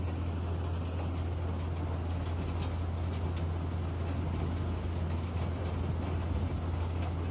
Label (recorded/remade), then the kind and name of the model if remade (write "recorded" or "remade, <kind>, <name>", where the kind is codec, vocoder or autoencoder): recorded